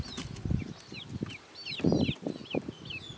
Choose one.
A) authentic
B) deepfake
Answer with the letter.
A